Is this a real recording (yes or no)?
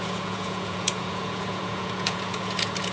no